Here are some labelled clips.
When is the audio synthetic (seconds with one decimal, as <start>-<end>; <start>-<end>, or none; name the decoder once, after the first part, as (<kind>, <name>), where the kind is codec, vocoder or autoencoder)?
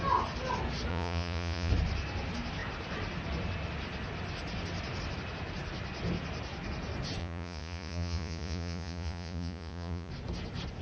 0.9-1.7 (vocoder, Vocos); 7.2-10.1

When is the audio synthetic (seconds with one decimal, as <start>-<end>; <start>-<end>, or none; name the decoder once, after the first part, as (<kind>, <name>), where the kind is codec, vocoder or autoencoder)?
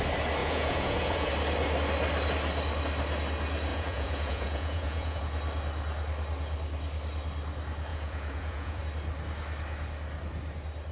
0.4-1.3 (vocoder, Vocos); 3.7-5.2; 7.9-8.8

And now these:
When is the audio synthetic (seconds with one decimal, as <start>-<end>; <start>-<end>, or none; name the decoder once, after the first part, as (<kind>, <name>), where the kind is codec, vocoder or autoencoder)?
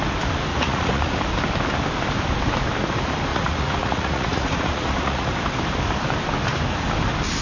0.5-1.2 (vocoder, Vocos); 3.3-5.3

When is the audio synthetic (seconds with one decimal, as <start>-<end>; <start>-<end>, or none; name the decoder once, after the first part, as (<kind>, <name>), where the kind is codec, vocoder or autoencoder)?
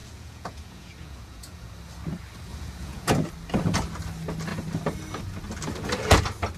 0.0-1.7 (vocoder, Vocos); 2.5-3.1